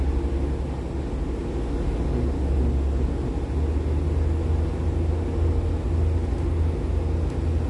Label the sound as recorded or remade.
recorded